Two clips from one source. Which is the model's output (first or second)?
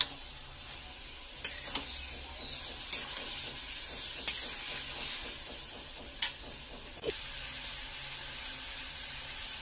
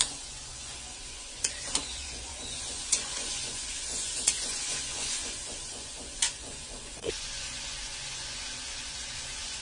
second